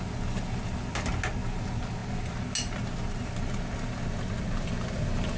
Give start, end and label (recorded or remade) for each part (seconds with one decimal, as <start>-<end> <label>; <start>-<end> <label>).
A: 0.0-5.4 recorded